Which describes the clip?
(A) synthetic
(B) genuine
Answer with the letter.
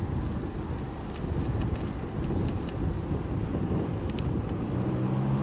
B